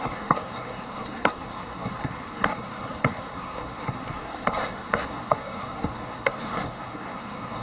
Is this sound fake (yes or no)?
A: yes